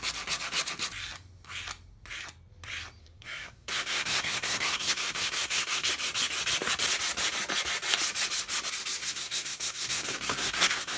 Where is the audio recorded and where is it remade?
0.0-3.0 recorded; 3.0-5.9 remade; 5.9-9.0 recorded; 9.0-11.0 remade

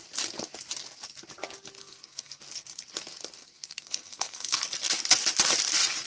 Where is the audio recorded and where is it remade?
0.0-1.8 recorded; 1.8-2.4 remade; 2.4-3.4 recorded; 3.4-4.6 remade; 4.6-6.1 recorded

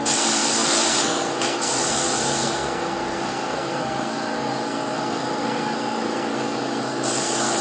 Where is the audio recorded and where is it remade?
0.0-7.6 remade

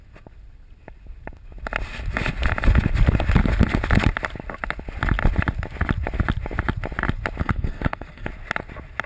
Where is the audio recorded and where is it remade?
0.0-7.4 recorded; 7.4-8.3 remade; 8.3-9.1 recorded

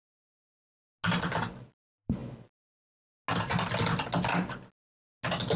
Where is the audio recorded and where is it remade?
0.0-5.6 recorded

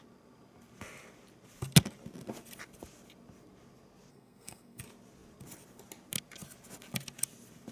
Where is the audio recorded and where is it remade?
0.0-4.1 recorded; 4.1-4.8 remade; 4.8-7.7 recorded

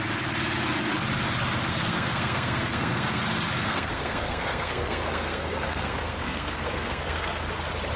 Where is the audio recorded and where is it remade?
0.0-1.7 recorded; 1.7-3.2 remade; 3.2-3.6 recorded; 3.6-7.5 remade; 7.5-8.0 recorded

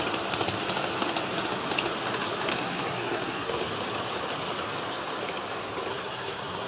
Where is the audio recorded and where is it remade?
0.0-2.5 recorded; 2.5-3.5 remade; 3.5-5.9 recorded; 5.9-6.7 remade